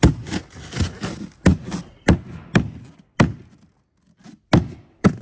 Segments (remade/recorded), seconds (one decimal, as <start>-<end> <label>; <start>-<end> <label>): 0.0-5.2 recorded